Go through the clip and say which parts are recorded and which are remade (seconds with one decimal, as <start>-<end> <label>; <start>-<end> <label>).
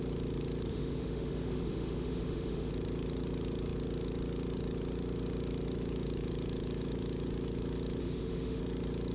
0.0-0.7 recorded; 0.7-2.7 remade; 2.7-8.0 recorded; 8.0-8.6 remade; 8.6-9.1 recorded